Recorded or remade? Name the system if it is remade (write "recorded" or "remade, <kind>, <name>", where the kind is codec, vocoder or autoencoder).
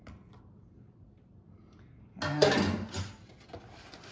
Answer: recorded